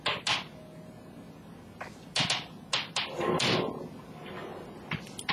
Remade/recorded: recorded